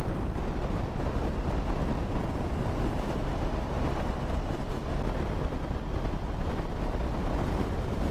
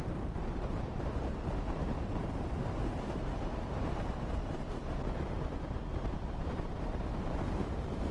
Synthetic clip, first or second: second